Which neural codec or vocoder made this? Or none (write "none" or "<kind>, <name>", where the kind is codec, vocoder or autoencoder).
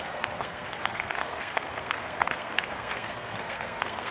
codec, SNAC